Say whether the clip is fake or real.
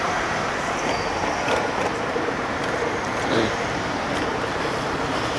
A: fake